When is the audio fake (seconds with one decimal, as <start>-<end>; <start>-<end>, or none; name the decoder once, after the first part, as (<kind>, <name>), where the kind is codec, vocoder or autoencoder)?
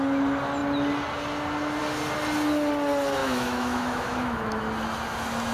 3.2-4.6 (autoencoder, DAC-VAE)